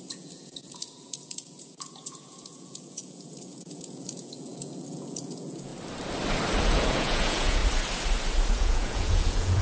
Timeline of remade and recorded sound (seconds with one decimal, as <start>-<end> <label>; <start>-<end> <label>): 0.0-5.7 remade; 5.7-6.6 recorded; 6.6-7.6 remade; 7.6-8.5 recorded; 8.5-9.6 remade